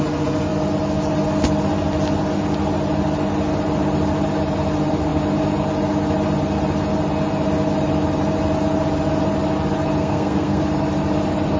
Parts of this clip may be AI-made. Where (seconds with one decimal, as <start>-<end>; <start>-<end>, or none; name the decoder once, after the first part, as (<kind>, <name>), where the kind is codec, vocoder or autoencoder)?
10.0-10.6 (codec, SNAC)